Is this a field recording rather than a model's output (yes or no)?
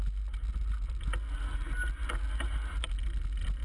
yes